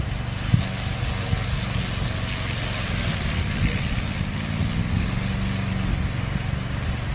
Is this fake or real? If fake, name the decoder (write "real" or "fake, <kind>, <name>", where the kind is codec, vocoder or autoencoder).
real